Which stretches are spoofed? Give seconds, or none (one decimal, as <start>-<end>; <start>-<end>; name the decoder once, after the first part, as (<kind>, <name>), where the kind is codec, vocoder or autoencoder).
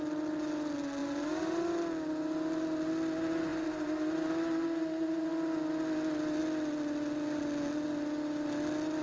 1.0-1.6 (vocoder, BigVGAN v2); 3.5-5.3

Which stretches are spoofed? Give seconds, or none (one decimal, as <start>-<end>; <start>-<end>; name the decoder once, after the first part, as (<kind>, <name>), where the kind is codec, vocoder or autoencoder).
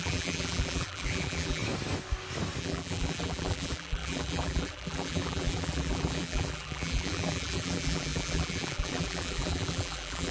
0.0-1.6 (vocoder, BigVGAN v2); 2.6-10.3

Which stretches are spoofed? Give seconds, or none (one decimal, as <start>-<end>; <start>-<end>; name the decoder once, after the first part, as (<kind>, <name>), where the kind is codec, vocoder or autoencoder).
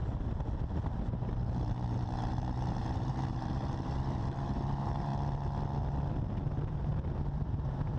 1.1-5.1 (vocoder, BigVGAN v2); 6.4-8.0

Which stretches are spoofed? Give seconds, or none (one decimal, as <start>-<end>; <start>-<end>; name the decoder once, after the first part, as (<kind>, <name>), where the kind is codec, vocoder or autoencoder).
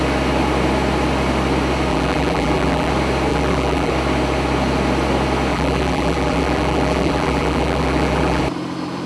1.9-2.9 (vocoder, BigVGAN v2); 3.3-3.9; 5.5-8.4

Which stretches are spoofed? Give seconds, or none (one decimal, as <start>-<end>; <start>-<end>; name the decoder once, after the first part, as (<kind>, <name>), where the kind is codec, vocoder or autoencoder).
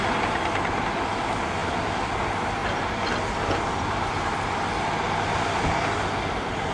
none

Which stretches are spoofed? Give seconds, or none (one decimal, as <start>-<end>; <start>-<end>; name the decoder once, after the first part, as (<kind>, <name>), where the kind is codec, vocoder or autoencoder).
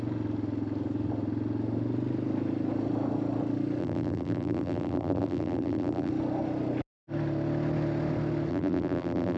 3.8-6.1 (vocoder, BigVGAN v2); 8.5-9.4